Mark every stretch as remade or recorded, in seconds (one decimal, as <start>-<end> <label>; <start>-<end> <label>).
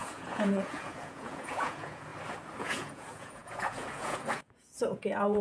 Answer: 0.0-2.1 remade; 2.1-2.6 recorded; 2.6-5.4 remade